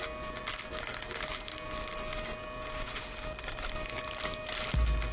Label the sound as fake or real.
real